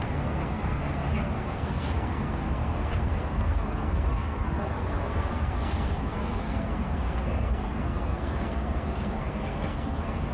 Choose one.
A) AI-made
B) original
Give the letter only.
A